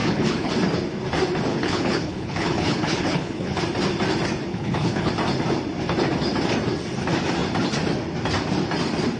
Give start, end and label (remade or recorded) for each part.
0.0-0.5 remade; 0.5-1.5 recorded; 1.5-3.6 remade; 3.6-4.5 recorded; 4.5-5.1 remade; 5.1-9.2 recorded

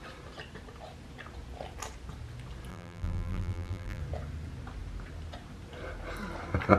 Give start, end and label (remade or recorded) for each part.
0.0-2.7 recorded; 2.7-4.0 remade; 4.0-6.8 recorded

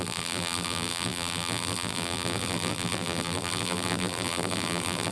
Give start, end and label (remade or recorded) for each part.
0.0-5.1 remade

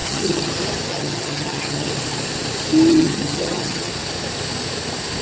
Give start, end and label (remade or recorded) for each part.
0.0-0.5 remade; 0.5-0.9 recorded; 0.9-1.9 remade; 1.9-2.9 recorded; 2.9-3.9 remade; 3.9-5.2 recorded

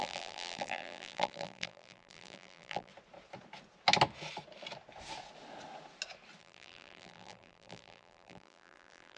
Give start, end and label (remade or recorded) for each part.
0.0-2.9 remade; 2.9-6.4 recorded; 6.4-9.2 remade